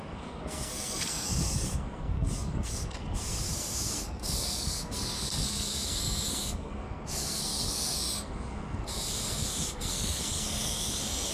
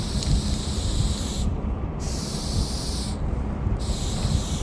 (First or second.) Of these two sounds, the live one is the second